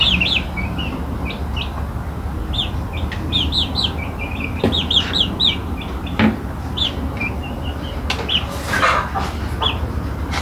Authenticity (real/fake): real